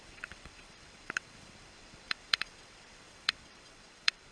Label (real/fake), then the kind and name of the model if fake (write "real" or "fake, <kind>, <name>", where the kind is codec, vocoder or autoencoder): fake, vocoder, WaveNeXt